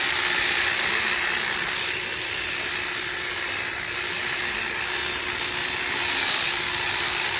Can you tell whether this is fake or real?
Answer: real